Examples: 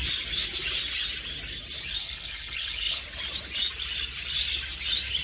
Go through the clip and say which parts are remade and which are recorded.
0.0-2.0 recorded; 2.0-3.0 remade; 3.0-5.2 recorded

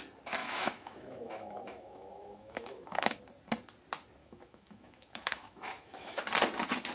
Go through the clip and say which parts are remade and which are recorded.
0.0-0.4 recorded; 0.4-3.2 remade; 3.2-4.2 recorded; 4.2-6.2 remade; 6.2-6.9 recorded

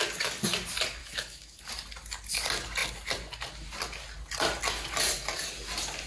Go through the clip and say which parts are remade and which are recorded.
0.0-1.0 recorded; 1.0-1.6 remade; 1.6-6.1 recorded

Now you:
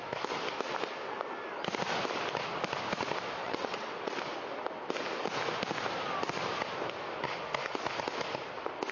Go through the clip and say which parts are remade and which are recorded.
0.0-3.4 recorded; 3.4-4.2 remade; 4.2-8.9 recorded

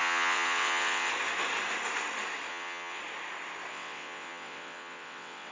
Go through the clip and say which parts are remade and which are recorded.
0.0-1.1 remade; 1.1-2.5 recorded; 2.5-3.0 remade; 3.0-3.7 recorded; 3.7-5.5 remade

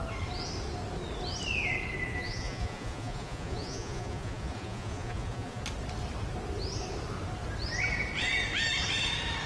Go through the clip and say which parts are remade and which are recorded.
0.0-2.1 recorded; 2.1-5.6 remade; 5.6-9.5 recorded

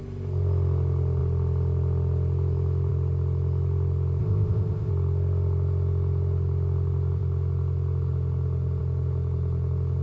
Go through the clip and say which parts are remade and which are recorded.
0.0-4.2 recorded; 4.2-4.9 remade; 4.9-10.0 recorded